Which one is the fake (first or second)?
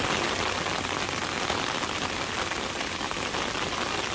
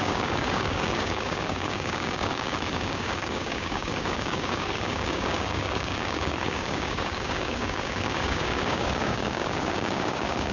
second